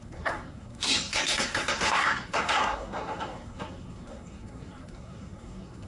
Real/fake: fake